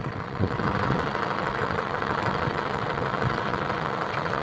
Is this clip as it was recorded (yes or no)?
no